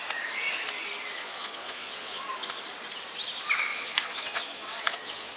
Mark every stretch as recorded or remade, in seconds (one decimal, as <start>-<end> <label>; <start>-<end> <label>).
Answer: 0.0-1.2 recorded; 1.2-2.2 remade; 2.2-3.7 recorded; 3.7-5.4 remade